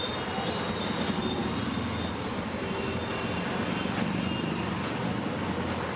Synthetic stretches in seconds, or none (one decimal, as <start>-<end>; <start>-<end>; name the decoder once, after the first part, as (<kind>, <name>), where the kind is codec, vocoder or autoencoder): none